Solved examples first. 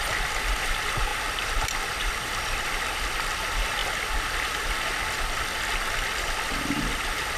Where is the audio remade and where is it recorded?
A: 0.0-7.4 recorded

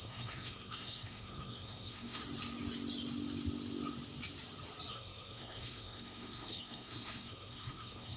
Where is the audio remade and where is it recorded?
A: 0.0-2.2 remade; 2.2-4.9 recorded; 4.9-8.2 remade